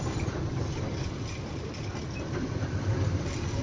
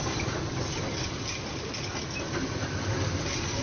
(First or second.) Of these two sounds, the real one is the second